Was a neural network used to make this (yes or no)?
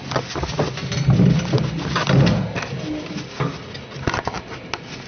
no